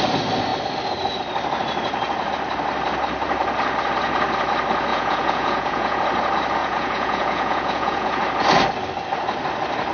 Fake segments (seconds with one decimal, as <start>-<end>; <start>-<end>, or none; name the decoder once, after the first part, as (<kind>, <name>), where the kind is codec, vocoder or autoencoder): 4.9-6.0 (vocoder, Vocos); 6.6-8.2